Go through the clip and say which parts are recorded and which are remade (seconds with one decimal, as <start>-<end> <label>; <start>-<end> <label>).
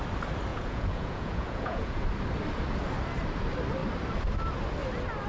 0.0-0.5 recorded; 0.5-2.0 remade; 2.0-5.3 recorded